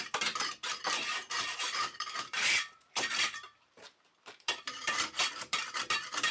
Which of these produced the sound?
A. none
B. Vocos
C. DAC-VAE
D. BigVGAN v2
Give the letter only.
D